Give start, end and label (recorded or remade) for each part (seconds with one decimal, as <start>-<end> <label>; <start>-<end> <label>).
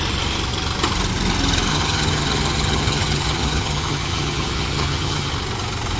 0.0-1.7 recorded; 1.7-5.3 remade; 5.3-6.0 recorded